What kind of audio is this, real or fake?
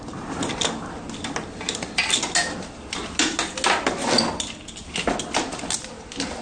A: real